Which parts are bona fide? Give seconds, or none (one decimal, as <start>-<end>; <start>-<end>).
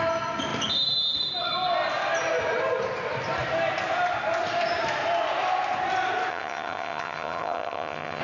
0.0-6.3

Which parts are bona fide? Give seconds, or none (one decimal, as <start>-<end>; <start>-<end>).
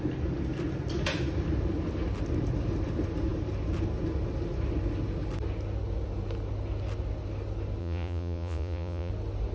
0.0-7.8; 9.1-9.5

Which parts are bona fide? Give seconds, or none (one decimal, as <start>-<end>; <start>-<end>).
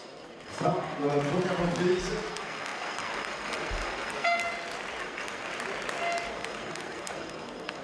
1.1-2.3; 4.4-5.0; 5.5-6.3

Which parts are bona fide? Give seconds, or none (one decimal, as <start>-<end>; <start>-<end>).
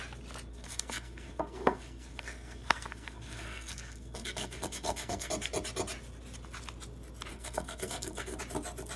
0.0-0.5; 5.3-7.3; 8.4-9.0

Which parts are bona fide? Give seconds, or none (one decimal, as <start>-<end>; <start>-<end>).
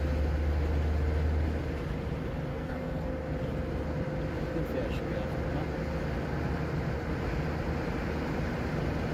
0.0-2.5; 3.1-9.1